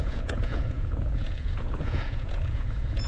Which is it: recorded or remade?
remade